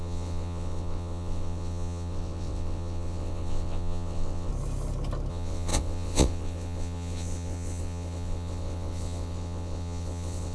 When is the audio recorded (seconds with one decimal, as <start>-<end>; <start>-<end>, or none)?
4.5-5.3